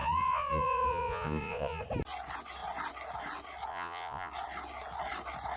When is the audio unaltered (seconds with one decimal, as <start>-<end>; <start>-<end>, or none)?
1.8-3.7; 4.3-5.6